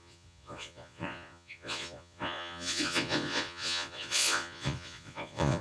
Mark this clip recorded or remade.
remade